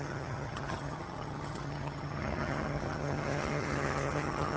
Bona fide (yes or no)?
no